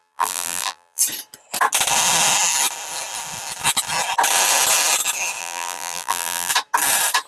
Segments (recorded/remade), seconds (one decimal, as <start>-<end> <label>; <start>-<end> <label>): 0.0-1.0 remade; 1.0-5.4 recorded; 5.4-6.5 remade; 6.5-7.3 recorded